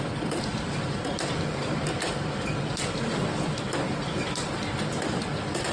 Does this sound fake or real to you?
fake